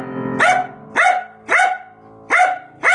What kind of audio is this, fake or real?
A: real